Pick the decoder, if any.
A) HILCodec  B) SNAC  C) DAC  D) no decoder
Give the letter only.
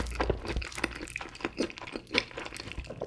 D